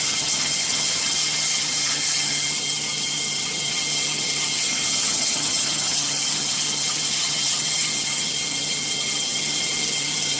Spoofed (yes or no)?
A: yes